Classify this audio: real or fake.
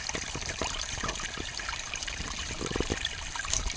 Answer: fake